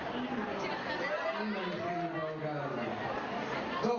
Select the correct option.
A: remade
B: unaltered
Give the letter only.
B